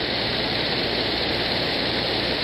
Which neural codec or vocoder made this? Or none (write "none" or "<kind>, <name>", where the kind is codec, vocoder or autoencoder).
vocoder, BigVGAN v2